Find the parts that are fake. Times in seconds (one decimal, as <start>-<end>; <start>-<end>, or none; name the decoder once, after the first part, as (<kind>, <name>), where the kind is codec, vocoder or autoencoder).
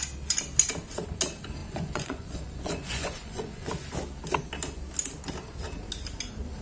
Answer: 1.6-3.7 (vocoder, Vocos)